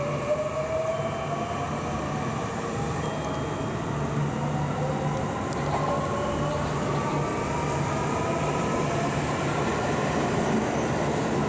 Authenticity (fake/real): real